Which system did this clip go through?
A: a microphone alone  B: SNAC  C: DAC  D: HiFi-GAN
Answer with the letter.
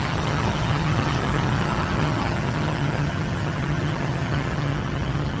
D